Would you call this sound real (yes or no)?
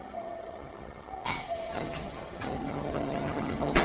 no